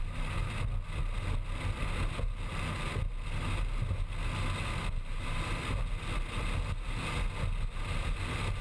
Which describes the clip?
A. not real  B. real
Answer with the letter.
B